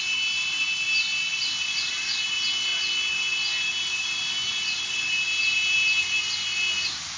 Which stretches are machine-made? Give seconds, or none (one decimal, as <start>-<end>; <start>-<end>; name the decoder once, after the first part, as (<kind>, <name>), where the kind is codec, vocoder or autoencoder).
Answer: none